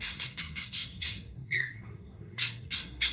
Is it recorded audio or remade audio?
remade